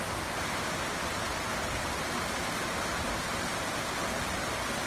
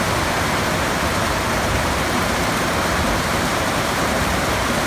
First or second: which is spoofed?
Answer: second